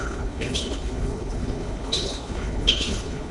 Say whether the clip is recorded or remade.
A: remade